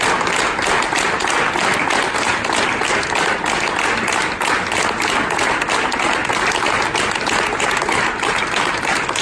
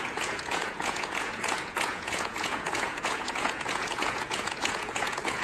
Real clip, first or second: first